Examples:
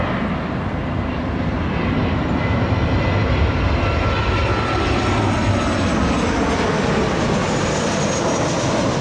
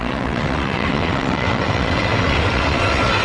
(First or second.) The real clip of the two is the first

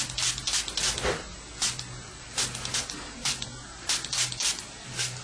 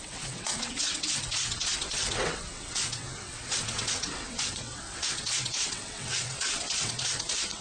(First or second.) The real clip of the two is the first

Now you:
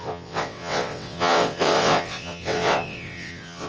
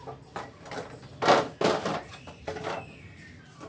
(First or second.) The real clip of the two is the second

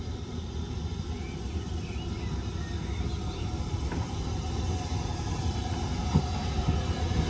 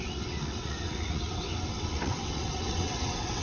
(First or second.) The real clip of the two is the first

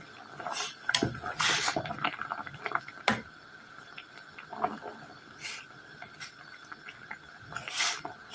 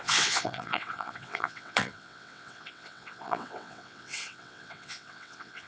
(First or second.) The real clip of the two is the first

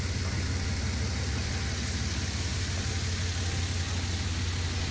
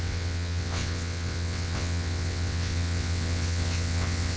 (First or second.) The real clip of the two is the first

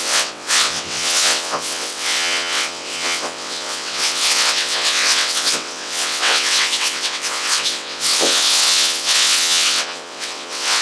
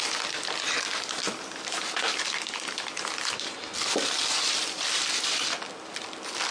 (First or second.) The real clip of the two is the second